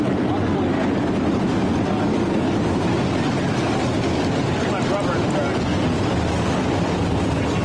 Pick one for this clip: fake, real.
real